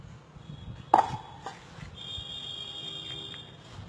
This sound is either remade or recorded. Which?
recorded